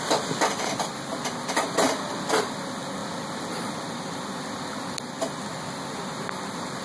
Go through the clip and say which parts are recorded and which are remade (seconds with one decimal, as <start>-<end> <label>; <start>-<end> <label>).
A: 0.0-6.8 recorded